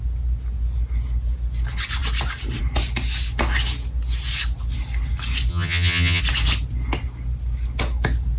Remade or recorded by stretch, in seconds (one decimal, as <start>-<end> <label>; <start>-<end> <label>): 0.0-5.5 recorded; 5.5-6.2 remade; 6.2-8.4 recorded